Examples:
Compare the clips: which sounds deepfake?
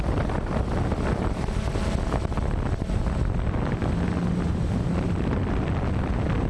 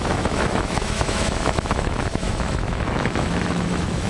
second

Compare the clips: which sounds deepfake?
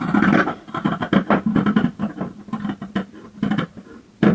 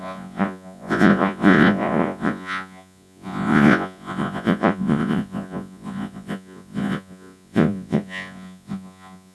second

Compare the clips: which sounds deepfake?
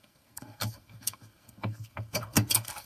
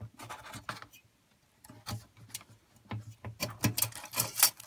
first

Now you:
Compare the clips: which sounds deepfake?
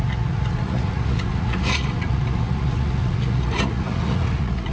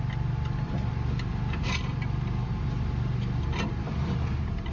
first